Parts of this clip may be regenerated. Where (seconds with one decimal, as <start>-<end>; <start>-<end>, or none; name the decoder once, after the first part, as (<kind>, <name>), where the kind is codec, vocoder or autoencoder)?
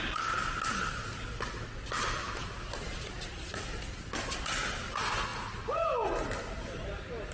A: 2.2-4.7 (vocoder, BigVGAN v2)